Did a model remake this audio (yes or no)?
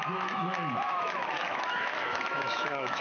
yes